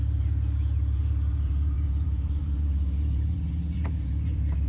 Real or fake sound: fake